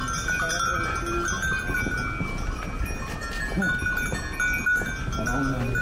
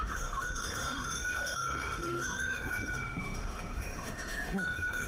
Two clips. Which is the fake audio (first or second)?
second